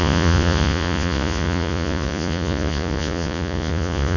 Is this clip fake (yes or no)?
yes